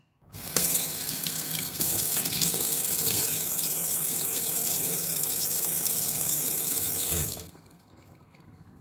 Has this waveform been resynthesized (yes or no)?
yes